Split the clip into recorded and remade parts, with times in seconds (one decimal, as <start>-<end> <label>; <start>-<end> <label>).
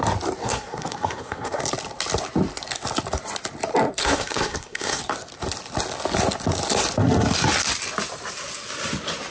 0.0-0.4 recorded; 0.4-1.6 remade; 1.6-4.0 recorded; 4.0-5.0 remade; 5.0-9.3 recorded